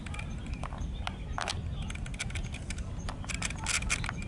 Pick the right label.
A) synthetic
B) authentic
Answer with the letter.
B